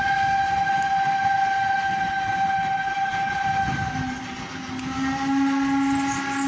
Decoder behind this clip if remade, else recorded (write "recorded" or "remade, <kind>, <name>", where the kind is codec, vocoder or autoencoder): recorded